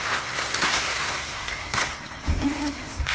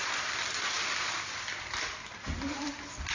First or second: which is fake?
first